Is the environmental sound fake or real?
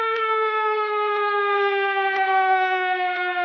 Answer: fake